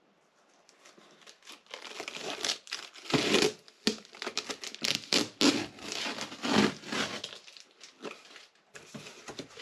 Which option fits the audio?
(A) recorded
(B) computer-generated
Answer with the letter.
A